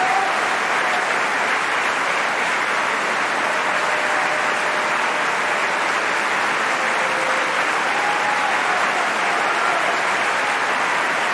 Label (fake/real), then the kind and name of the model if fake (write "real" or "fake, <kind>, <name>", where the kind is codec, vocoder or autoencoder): real